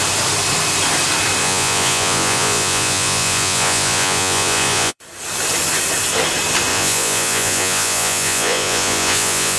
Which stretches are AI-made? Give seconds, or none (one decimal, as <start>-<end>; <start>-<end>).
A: 1.4-5.0; 6.7-9.6